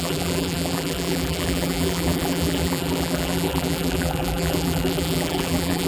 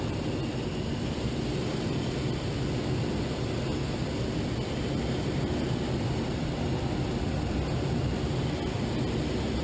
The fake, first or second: first